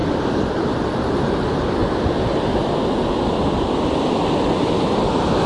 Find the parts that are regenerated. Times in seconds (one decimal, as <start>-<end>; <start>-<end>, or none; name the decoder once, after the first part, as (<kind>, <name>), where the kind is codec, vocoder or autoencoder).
none